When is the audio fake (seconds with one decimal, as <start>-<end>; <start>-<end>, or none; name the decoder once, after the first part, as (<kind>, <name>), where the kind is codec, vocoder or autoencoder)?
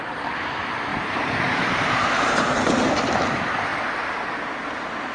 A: 0.9-3.3 (vocoder, BigVGAN v2)